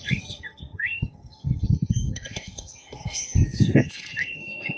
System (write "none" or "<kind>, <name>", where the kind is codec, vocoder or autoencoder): codec, SNAC